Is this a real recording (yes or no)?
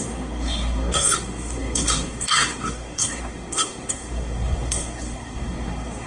no